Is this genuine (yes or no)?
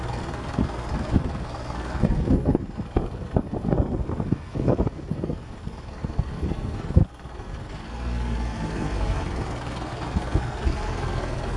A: no